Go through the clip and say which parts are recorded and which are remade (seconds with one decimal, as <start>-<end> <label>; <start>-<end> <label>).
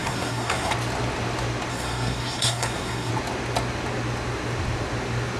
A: 0.0-0.7 remade; 0.7-1.7 recorded; 1.7-3.1 remade; 3.1-5.4 recorded